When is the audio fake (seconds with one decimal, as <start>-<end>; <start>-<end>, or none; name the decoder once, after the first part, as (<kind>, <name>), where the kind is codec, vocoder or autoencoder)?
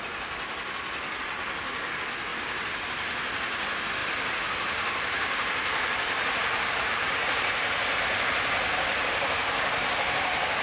2.3-2.9 (vocoder, BigVGAN v2); 4.0-8.0